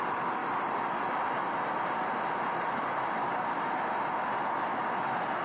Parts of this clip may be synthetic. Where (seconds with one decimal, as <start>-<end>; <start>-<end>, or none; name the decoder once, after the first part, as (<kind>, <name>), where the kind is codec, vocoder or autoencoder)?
none